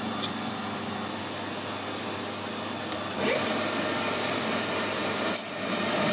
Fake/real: real